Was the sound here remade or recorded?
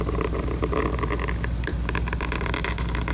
recorded